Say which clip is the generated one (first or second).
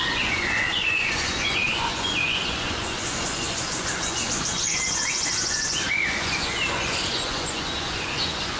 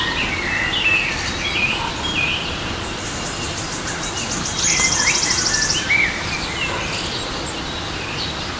first